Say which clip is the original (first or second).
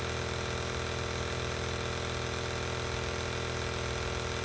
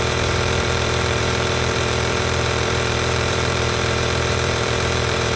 first